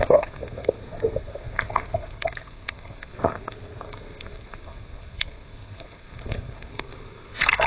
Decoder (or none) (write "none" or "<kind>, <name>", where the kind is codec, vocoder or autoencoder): codec, SNAC